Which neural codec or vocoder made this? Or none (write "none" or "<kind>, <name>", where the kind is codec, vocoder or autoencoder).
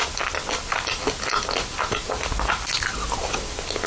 none